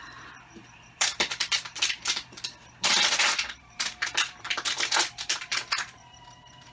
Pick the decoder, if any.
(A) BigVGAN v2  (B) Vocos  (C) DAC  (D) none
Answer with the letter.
A